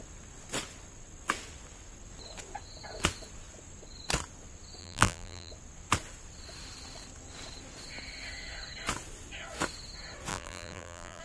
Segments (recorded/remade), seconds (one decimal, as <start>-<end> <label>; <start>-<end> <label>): 0.0-4.8 recorded; 4.8-5.5 remade; 5.5-10.3 recorded; 10.3-11.2 remade